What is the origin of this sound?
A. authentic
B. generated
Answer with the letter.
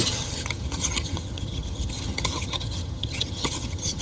B